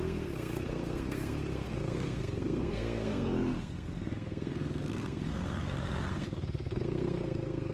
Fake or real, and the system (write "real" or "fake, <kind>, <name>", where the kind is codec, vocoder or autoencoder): fake, codec, SNAC